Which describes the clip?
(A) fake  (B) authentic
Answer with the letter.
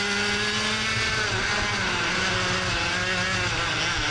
B